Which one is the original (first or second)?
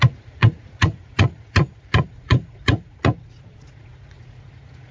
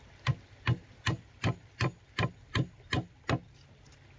second